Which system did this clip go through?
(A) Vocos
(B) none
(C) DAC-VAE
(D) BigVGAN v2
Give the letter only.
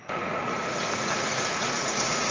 A